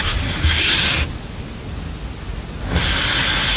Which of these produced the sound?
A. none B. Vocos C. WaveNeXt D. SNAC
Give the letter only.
A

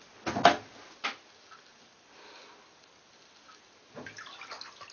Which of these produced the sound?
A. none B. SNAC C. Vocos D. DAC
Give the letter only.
A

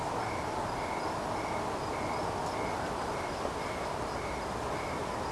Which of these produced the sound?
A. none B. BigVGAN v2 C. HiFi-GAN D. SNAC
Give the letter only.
A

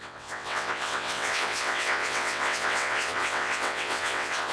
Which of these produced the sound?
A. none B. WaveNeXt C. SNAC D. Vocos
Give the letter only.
B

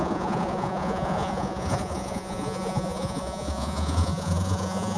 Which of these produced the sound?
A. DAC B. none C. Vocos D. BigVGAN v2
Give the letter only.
C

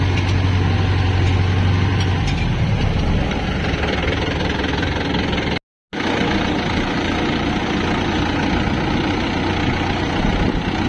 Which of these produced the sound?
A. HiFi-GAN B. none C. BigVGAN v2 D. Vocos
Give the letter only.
B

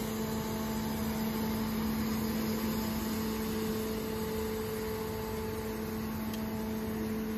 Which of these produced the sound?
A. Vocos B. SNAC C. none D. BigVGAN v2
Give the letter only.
C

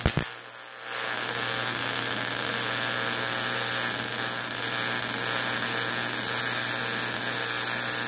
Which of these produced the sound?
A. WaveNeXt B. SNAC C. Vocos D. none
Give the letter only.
D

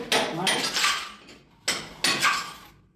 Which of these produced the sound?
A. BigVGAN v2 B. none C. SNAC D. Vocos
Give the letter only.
B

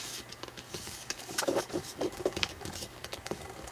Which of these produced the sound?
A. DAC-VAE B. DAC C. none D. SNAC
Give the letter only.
B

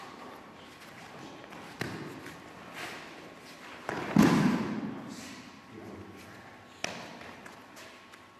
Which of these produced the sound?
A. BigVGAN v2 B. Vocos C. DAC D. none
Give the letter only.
D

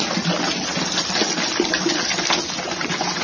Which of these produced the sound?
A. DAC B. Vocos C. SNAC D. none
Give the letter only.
D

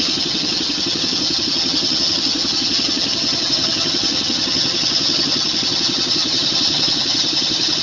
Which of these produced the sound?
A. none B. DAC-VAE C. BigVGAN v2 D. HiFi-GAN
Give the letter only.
D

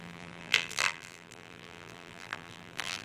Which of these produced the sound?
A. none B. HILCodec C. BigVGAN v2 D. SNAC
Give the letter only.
C